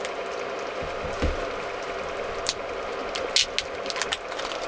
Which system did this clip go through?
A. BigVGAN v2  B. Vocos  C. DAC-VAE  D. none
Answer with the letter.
D